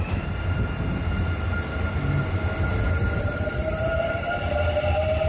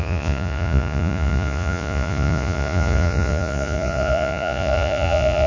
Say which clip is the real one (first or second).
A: first